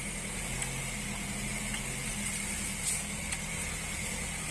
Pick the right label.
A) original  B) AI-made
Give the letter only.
A